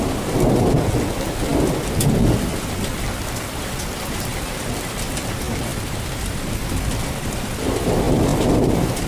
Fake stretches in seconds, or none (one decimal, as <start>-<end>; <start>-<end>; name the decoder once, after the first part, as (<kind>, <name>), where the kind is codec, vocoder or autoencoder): none